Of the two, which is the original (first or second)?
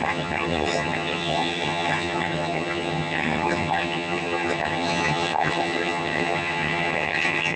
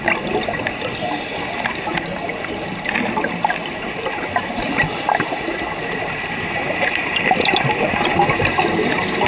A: second